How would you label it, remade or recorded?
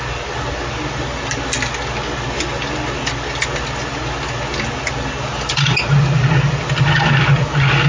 recorded